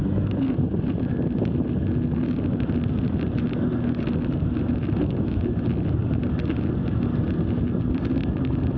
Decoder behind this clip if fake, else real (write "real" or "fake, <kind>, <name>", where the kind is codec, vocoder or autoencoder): real